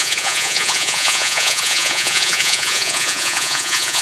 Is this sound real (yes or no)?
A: no